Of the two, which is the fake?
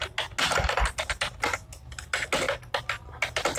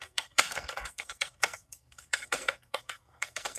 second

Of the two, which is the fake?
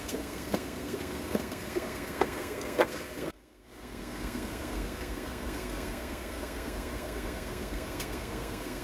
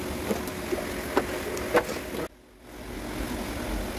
first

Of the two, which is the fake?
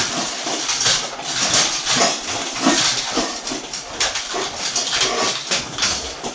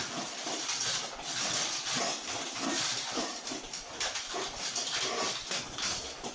second